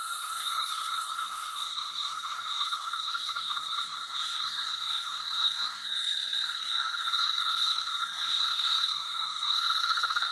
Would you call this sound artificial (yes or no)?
yes